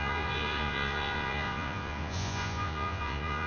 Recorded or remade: remade